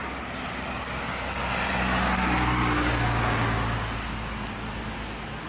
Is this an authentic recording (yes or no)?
yes